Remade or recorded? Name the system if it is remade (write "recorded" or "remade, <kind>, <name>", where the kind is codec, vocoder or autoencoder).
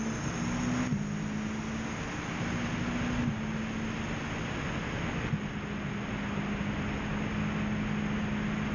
recorded